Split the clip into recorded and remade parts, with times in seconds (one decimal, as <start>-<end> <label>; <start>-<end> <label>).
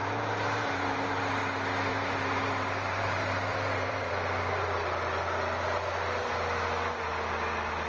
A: 0.0-1.4 remade; 1.4-1.9 recorded; 1.9-4.1 remade; 4.1-7.9 recorded